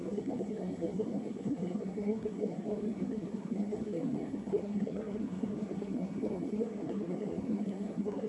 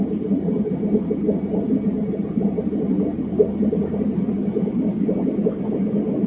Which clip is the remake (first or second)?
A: first